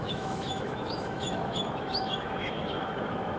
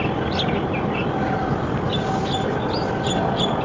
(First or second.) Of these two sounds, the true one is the second